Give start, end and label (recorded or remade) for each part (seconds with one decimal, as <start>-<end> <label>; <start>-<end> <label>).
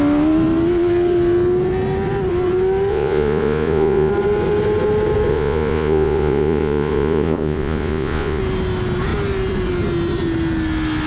0.0-2.9 recorded; 2.9-4.1 remade; 4.1-5.3 recorded; 5.3-8.4 remade; 8.4-11.1 recorded